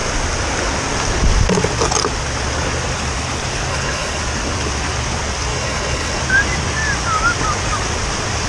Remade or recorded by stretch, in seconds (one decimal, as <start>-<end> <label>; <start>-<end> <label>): 0.0-3.7 recorded; 3.7-4.2 remade; 4.2-5.5 recorded; 5.5-6.2 remade; 6.2-8.5 recorded